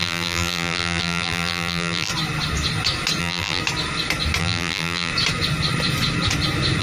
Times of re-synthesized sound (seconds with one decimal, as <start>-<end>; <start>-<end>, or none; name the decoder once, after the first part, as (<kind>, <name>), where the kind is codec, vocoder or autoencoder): 0.0-2.1 (vocoder, BigVGAN v2); 3.2-3.6; 4.4-5.1